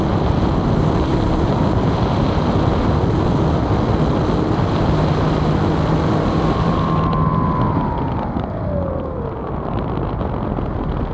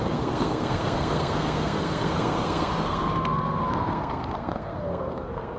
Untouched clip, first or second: first